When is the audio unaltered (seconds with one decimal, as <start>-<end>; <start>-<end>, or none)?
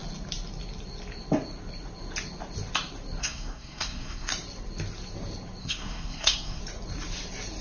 0.0-3.2; 4.3-5.6; 6.6-7.6